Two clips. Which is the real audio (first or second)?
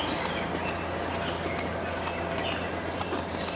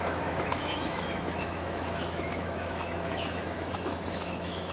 first